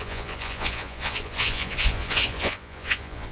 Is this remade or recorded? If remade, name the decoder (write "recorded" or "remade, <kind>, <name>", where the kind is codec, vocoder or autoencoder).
remade, vocoder, Vocos